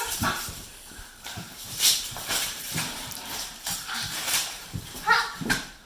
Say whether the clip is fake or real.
fake